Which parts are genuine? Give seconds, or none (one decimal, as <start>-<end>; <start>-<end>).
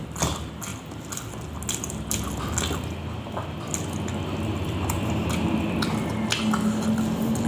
0.0-7.5